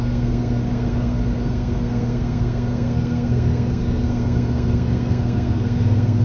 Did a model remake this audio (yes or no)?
yes